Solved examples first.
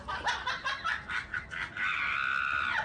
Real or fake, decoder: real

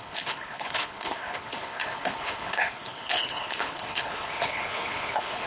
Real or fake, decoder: fake, codec, HILCodec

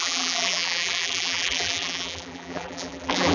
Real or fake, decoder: fake, vocoder, BigVGAN v2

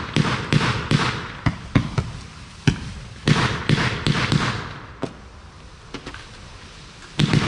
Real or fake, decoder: real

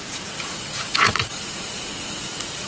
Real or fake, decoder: fake, vocoder, Vocos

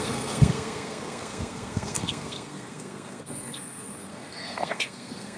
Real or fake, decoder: fake, codec, SNAC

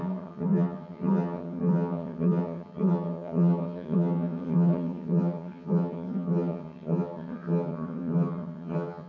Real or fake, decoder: fake, vocoder, HiFi-GAN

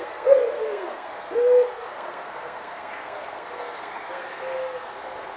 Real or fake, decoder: fake, codec, SNAC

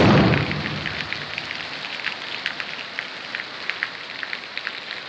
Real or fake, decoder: real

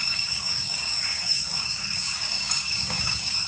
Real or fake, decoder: fake, codec, DAC